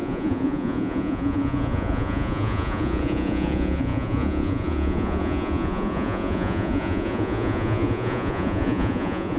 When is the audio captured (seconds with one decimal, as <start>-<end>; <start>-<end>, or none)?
none